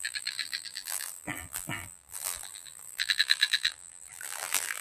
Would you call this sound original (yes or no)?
no